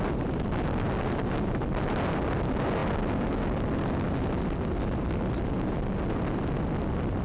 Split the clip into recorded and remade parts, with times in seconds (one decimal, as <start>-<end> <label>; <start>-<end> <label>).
0.0-7.2 recorded